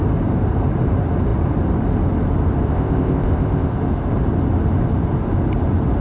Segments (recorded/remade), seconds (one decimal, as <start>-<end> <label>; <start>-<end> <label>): 0.0-2.7 recorded; 2.7-3.7 remade; 3.7-6.0 recorded